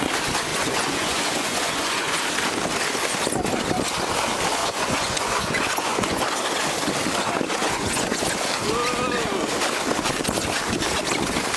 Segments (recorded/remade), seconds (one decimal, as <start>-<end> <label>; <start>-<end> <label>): 0.0-0.5 recorded; 0.5-2.2 remade; 2.2-4.6 recorded; 4.6-6.2 remade; 6.2-7.6 recorded; 7.6-8.2 remade; 8.2-11.6 recorded